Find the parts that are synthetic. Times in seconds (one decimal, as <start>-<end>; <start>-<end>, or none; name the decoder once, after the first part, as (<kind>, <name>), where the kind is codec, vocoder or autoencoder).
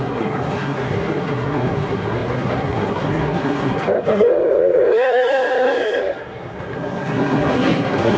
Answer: 0.0-8.2 (codec, SNAC)